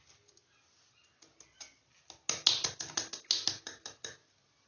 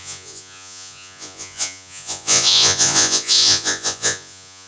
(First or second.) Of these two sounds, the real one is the first